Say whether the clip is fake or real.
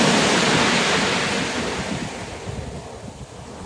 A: real